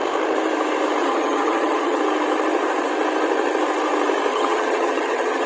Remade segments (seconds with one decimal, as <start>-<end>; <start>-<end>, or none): 1.0-2.0; 4.3-5.5